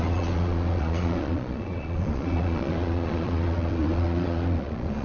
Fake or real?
fake